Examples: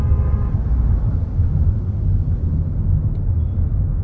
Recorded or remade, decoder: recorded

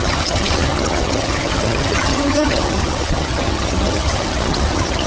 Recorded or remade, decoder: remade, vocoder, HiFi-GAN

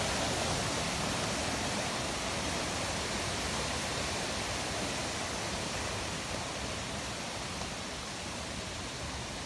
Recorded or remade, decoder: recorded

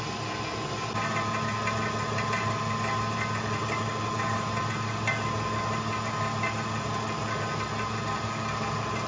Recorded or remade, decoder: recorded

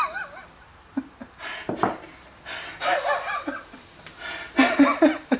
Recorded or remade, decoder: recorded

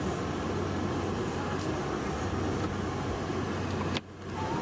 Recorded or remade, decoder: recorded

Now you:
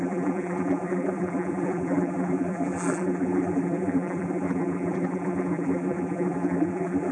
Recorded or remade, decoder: remade, vocoder, BigVGAN v2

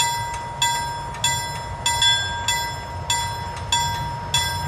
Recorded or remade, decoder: recorded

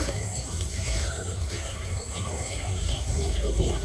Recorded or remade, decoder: remade, codec, SNAC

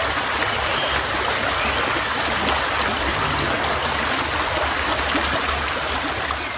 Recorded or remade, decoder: recorded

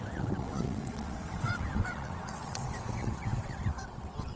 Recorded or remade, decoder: remade, vocoder, WaveNeXt